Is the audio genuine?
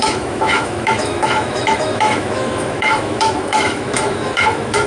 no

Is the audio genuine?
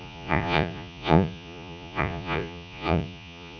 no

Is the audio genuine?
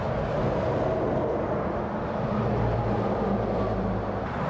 yes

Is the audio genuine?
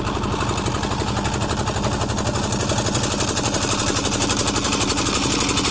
yes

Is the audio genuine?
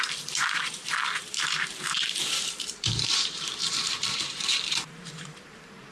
no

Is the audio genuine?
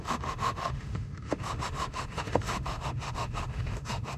no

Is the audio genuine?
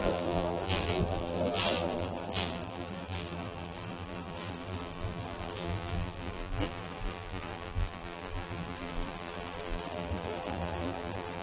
no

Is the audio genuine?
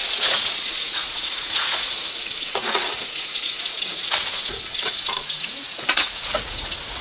no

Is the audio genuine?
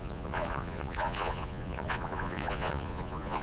no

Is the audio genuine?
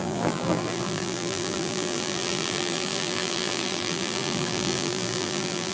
no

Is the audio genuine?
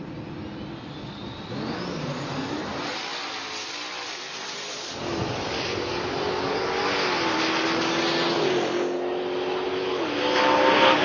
yes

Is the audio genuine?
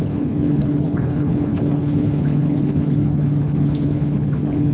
no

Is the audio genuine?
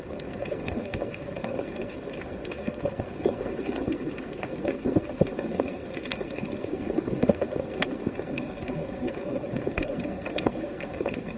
no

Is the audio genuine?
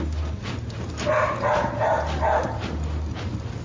yes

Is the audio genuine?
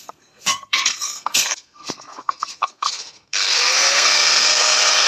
no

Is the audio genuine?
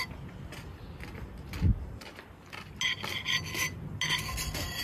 yes